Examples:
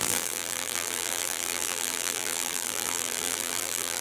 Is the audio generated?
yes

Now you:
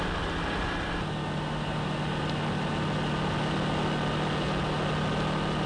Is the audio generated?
no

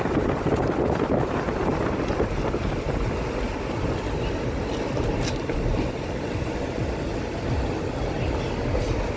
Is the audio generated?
no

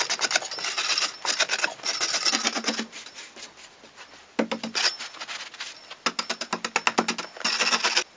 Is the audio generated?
no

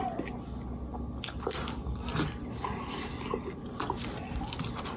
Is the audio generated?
no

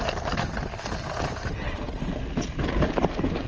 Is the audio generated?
no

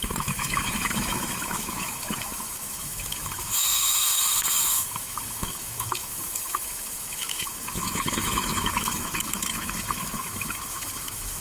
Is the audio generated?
yes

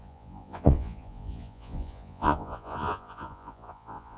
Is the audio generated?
yes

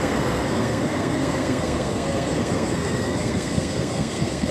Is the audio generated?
yes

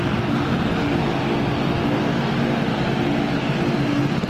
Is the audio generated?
no